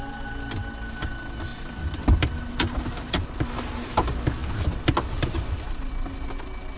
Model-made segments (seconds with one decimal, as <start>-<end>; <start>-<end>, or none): 4.4-5.9